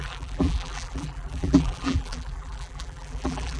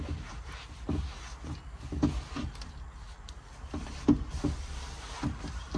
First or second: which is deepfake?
first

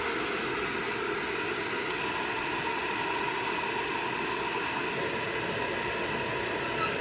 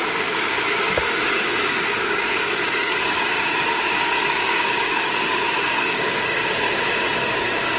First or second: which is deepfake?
second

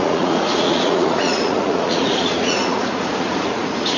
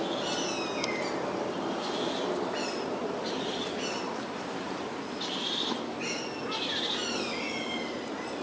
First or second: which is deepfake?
first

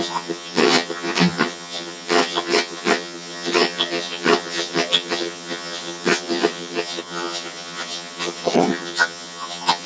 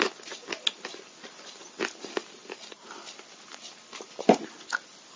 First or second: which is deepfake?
first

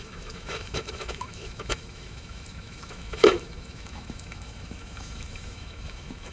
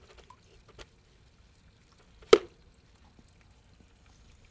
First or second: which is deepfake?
first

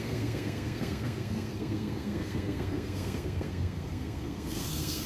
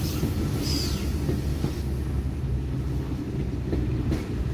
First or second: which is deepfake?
first